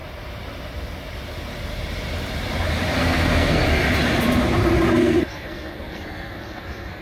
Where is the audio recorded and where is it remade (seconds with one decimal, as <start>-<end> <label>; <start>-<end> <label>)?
0.0-3.0 recorded; 3.0-3.6 remade; 3.6-5.0 recorded; 5.0-7.0 remade